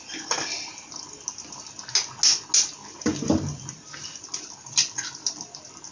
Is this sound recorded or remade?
recorded